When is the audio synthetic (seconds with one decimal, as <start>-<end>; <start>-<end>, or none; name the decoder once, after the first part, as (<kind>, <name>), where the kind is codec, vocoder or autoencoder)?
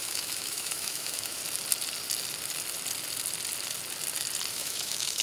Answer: 0.0-1.4 (autoencoder, DAC-VAE); 4.5-5.2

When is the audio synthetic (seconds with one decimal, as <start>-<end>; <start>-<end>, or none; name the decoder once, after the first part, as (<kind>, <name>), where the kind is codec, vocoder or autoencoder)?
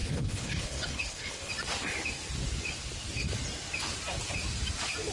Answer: 0.0-1.5 (codec, HILCodec)